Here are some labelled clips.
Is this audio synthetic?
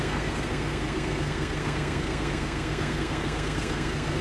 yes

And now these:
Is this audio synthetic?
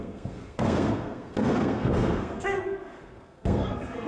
yes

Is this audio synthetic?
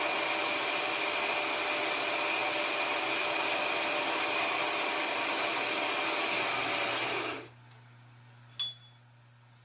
no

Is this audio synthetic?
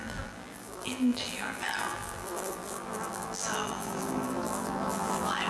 yes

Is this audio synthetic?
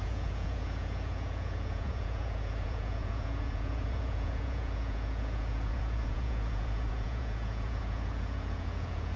yes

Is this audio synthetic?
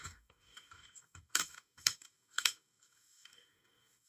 yes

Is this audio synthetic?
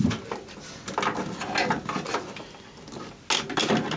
no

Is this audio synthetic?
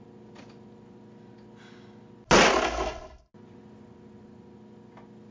no